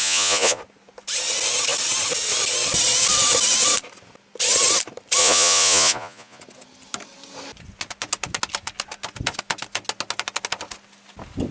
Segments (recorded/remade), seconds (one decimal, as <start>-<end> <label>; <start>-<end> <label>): 0.0-0.6 remade; 0.6-5.2 recorded; 5.2-6.4 remade; 6.4-11.5 recorded